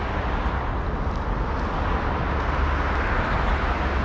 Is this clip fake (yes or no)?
no